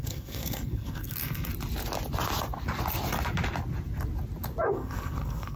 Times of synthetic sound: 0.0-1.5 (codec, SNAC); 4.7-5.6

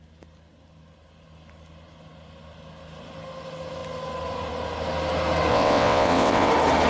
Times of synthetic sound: 5.5-6.5 (vocoder, WaveNeXt)

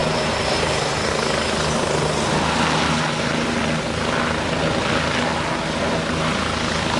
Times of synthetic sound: 0.0-1.1 (vocoder, BigVGAN v2)

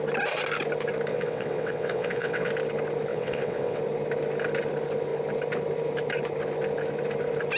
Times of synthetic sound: 1.1-2.5 (vocoder, WaveNeXt); 3.1-3.8

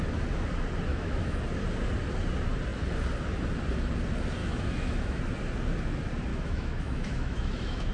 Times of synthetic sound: 0.9-1.4 (autoencoder, DAC-VAE); 4.4-5.2; 6.3-7.9

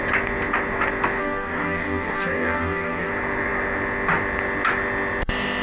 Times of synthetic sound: 1.2-3.1 (codec, DAC)